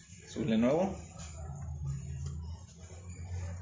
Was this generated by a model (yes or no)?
no